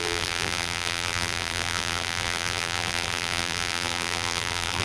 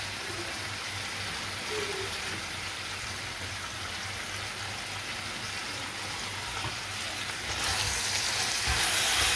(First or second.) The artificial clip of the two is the first